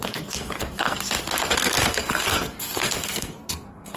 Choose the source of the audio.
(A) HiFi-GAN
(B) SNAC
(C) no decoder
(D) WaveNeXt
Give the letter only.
B